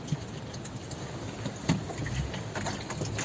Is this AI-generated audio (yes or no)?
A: no